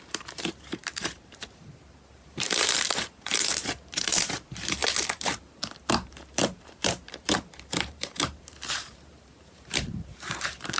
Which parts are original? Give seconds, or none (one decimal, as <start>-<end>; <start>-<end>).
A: none